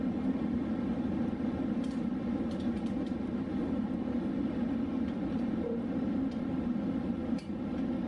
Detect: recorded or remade remade